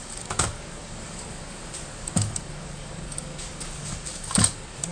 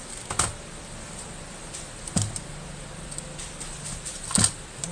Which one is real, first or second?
second